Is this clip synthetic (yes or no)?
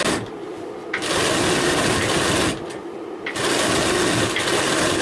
no